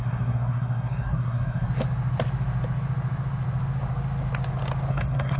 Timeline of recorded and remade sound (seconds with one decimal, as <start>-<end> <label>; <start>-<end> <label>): 0.0-1.7 remade; 1.7-4.9 recorded; 4.9-5.4 remade